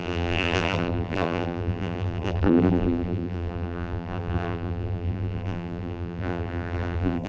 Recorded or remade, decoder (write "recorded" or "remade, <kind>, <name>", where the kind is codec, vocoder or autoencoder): remade, vocoder, BigVGAN v2